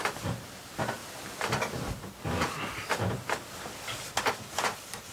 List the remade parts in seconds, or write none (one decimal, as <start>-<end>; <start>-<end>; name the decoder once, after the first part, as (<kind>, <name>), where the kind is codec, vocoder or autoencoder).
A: none